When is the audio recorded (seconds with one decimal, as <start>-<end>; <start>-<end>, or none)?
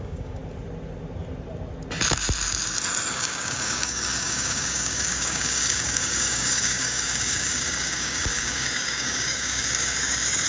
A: 0.4-3.1